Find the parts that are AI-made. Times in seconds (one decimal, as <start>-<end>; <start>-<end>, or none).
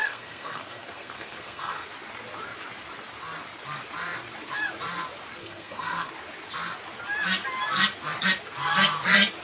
0.0-1.9; 5.4-6.1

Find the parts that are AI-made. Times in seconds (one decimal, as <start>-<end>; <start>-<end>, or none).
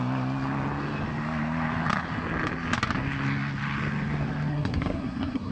4.5-5.5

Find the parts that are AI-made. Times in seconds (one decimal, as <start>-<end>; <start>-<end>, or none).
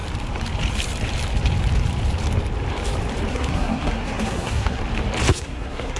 3.3-4.8; 5.3-6.0